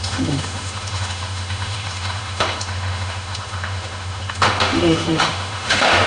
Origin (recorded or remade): remade